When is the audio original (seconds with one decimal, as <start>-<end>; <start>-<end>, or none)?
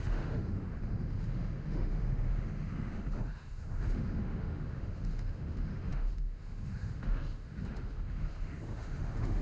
none